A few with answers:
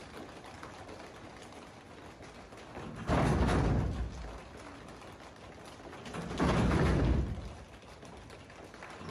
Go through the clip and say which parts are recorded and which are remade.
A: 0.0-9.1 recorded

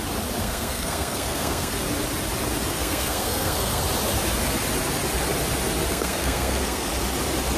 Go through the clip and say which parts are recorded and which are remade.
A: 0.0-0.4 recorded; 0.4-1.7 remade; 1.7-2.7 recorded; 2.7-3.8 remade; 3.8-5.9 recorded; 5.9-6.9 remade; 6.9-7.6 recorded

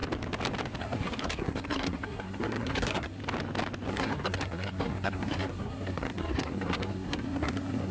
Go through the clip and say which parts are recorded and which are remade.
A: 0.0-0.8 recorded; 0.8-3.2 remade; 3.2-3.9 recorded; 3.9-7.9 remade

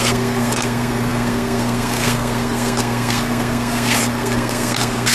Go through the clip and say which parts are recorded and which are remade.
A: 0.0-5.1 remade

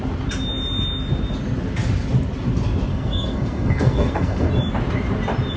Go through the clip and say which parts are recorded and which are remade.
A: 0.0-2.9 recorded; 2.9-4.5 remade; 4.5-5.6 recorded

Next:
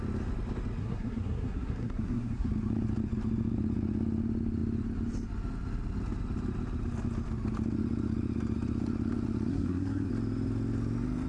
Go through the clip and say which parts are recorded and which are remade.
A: 0.0-0.8 recorded; 0.8-2.5 remade; 2.5-9.5 recorded; 9.5-10.1 remade; 10.1-11.3 recorded

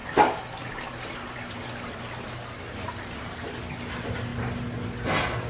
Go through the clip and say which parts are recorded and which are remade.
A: 0.0-5.5 recorded

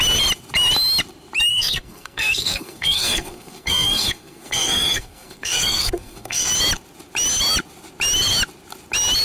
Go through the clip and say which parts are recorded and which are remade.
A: 0.0-1.5 recorded; 1.5-6.5 remade; 6.5-9.2 recorded